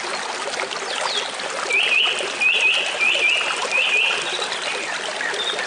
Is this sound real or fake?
real